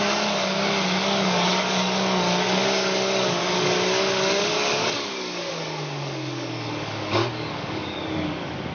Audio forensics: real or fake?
fake